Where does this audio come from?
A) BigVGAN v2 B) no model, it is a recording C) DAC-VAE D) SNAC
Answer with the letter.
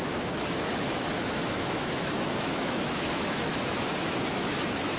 C